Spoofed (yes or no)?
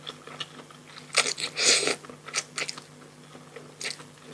no